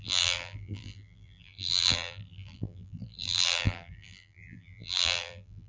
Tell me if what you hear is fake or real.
fake